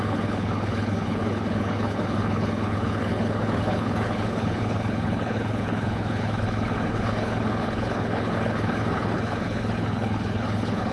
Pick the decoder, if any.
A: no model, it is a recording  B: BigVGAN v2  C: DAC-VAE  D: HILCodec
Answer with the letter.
D